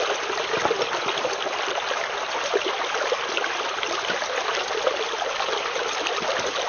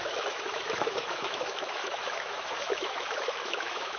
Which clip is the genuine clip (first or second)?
first